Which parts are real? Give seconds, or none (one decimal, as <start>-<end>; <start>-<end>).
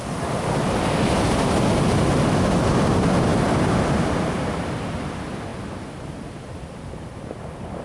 0.0-7.8